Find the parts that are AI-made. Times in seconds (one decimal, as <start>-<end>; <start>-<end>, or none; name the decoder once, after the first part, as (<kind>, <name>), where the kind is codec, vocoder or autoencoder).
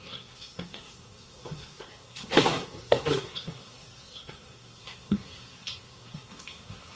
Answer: 0.0-7.0 (codec, SNAC)